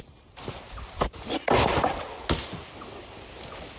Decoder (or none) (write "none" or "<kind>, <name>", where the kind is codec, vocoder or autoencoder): none